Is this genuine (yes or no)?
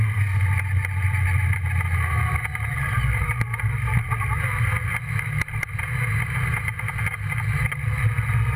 yes